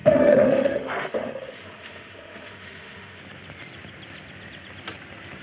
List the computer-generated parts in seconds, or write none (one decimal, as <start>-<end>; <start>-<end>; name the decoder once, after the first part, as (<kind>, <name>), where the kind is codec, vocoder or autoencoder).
0.0-3.2 (autoencoder, DAC-VAE)